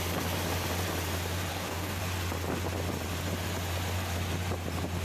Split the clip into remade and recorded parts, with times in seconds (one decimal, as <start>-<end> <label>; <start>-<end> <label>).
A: 0.0-1.5 recorded; 1.5-2.0 remade; 2.0-5.0 recorded